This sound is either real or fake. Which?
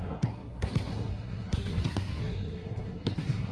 fake